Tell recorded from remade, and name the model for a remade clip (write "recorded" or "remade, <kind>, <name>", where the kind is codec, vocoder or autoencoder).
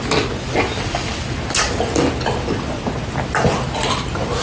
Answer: recorded